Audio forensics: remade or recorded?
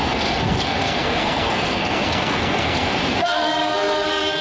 remade